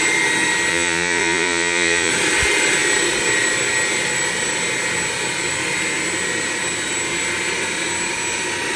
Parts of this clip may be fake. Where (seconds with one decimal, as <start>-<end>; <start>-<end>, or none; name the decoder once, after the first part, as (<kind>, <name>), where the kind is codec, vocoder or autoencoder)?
0.7-2.1 (vocoder, Vocos)